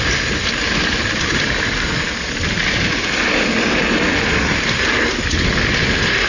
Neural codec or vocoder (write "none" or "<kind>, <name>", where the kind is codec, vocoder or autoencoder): none